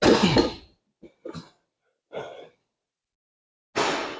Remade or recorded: recorded